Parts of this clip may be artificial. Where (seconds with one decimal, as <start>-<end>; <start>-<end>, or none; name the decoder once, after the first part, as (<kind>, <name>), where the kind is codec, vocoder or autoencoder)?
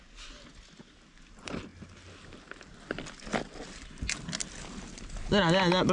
none